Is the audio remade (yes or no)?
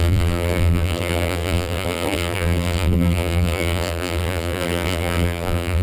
yes